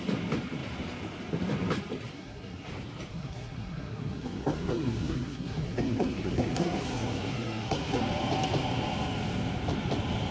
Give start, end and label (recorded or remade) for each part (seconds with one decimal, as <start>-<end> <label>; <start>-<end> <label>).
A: 0.0-2.1 recorded; 2.1-2.7 remade; 2.7-3.1 recorded; 3.1-8.0 remade; 8.0-10.3 recorded